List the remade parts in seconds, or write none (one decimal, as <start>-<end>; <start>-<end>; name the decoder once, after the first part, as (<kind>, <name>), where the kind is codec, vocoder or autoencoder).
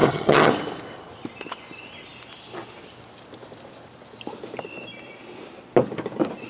0.0-0.5 (vocoder, HiFi-GAN)